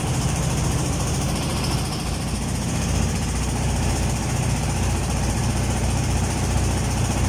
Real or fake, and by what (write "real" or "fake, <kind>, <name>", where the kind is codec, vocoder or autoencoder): fake, vocoder, BigVGAN v2